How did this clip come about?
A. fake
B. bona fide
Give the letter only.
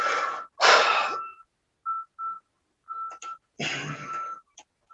B